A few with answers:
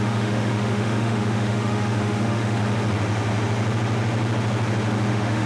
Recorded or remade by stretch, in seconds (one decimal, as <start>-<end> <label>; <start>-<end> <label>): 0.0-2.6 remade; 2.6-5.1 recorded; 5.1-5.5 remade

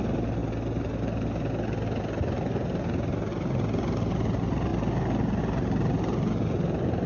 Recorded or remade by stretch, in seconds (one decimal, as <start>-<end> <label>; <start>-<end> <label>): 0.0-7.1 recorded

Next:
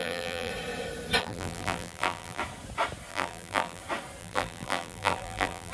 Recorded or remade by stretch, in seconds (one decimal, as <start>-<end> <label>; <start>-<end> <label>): 0.0-0.5 remade; 0.5-1.2 recorded; 1.2-2.4 remade; 2.4-3.1 recorded; 3.1-3.8 remade; 3.8-4.2 recorded; 4.2-5.7 remade

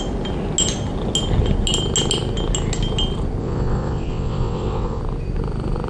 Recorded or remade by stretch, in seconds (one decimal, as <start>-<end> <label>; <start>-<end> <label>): 0.0-3.4 recorded; 3.4-5.0 remade; 5.0-5.9 recorded

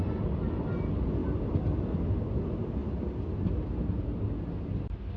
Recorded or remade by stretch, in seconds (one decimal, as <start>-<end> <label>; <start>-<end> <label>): 0.0-5.2 recorded

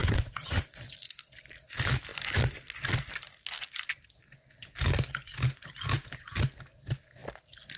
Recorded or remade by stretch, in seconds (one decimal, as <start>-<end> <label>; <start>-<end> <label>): 0.0-0.6 remade; 0.6-7.8 recorded